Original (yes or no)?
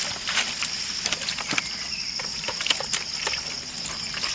yes